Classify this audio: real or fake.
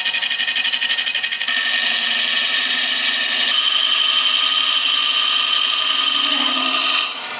real